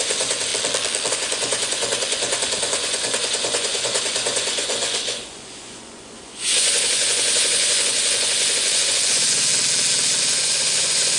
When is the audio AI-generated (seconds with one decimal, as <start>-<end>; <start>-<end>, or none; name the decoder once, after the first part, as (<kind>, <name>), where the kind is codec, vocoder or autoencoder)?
0.0-0.5 (vocoder, Vocos); 1.1-9.5; 10.2-11.2